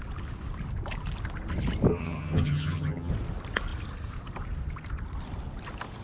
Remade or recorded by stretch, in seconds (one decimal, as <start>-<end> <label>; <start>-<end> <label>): 0.0-1.9 recorded; 1.9-3.1 remade; 3.1-6.0 recorded